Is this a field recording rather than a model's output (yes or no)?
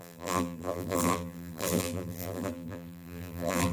no